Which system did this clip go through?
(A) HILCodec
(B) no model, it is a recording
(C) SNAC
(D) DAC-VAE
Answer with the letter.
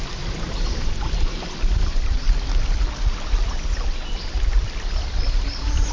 B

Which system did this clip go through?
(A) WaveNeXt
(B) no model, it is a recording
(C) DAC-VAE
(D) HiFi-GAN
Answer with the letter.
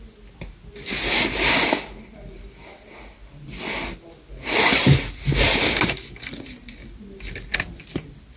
B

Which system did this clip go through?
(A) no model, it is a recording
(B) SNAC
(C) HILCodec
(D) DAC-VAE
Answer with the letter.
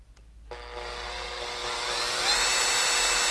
A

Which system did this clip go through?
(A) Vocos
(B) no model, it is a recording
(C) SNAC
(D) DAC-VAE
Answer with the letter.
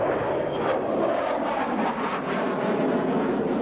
B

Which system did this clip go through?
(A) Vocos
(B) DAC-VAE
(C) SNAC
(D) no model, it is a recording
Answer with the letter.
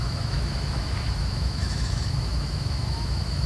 B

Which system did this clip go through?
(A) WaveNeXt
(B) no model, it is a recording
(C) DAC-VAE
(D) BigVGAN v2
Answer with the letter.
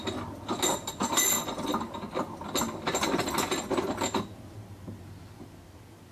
B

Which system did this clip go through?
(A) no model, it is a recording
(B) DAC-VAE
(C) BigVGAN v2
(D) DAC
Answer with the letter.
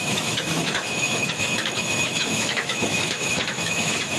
B